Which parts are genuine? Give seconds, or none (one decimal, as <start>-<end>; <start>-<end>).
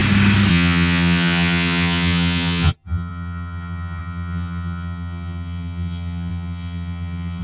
0.0-0.5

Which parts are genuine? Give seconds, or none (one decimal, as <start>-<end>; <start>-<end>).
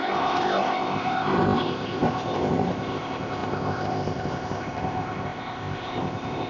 none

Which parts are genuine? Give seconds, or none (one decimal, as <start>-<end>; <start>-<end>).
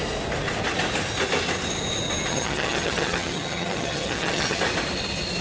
0.0-2.3; 4.6-5.4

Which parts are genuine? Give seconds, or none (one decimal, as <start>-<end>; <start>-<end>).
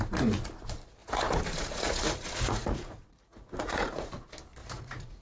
0.0-1.0; 4.1-4.6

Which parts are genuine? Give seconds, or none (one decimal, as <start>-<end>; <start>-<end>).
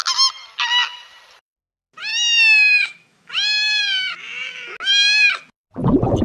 0.0-2.1; 3.3-6.2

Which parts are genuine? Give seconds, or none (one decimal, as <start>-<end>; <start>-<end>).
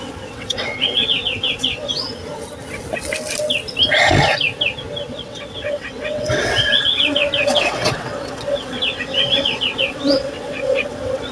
2.1-5.1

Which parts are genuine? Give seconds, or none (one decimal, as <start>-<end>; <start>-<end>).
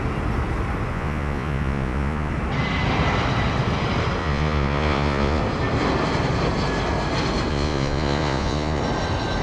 0.0-0.9; 2.3-4.2; 5.4-7.5; 8.8-9.4